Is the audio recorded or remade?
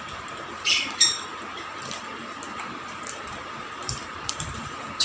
remade